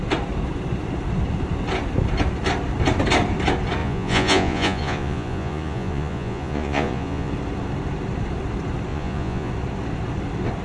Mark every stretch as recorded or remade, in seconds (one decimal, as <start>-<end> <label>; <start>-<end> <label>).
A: 0.0-3.8 recorded; 3.8-7.3 remade; 7.3-8.9 recorded; 8.9-9.5 remade; 9.5-10.6 recorded